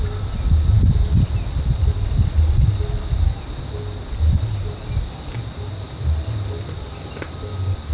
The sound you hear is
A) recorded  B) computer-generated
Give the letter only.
A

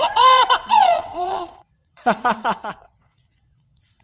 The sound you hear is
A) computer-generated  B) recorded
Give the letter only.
A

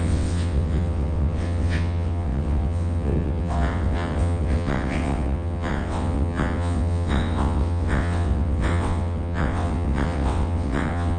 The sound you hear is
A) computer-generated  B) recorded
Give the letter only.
A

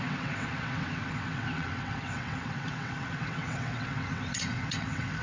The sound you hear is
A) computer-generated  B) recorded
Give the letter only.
A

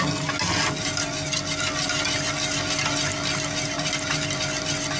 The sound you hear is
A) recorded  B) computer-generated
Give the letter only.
A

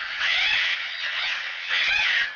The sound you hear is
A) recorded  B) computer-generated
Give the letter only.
B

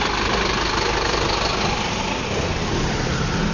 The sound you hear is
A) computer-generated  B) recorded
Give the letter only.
B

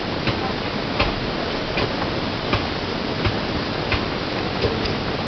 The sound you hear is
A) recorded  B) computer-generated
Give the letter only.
A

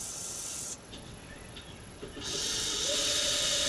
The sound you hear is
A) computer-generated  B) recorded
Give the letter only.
A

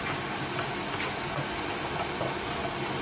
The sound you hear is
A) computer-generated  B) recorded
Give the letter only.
B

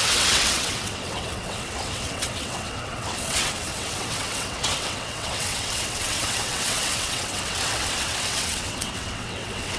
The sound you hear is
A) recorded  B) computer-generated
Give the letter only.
B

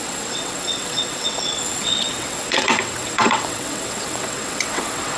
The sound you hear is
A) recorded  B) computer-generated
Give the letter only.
B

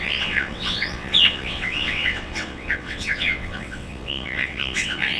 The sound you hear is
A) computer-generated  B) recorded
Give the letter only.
A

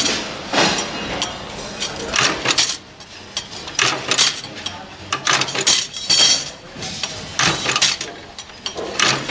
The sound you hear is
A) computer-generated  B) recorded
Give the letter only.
B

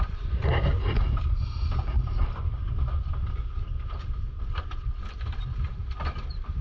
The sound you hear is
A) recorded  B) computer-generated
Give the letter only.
A